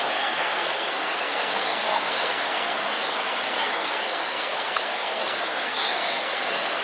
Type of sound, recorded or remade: remade